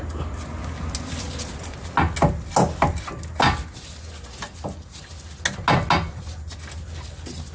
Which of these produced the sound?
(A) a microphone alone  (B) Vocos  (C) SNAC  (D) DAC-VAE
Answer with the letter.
A